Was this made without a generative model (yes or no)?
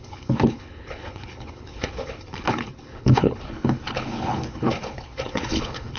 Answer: no